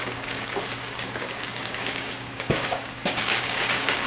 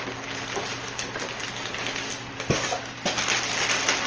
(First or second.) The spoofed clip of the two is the first